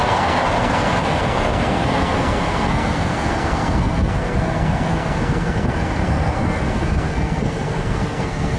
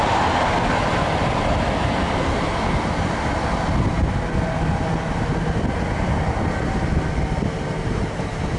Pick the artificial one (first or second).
first